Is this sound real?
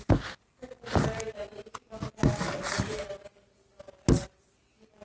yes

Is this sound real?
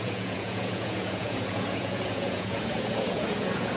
no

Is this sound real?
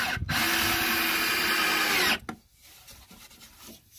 yes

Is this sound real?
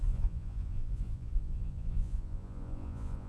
no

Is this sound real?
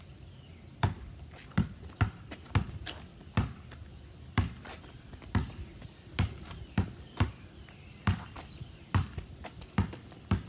yes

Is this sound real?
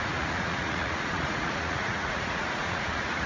no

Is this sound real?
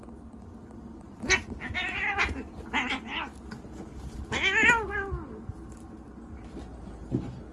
yes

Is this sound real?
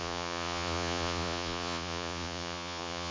no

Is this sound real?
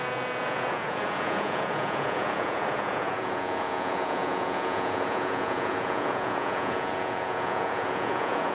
no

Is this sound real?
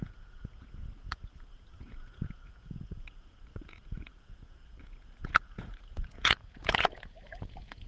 no